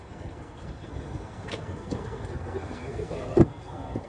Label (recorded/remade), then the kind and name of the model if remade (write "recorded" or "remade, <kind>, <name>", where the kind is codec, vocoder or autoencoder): remade, codec, SNAC